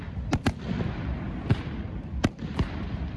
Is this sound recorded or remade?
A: remade